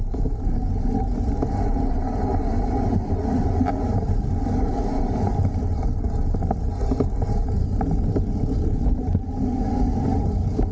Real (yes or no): yes